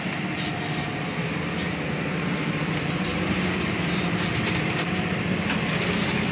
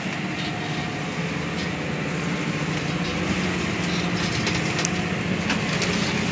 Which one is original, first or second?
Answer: second